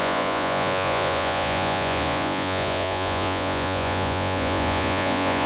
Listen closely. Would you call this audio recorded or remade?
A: remade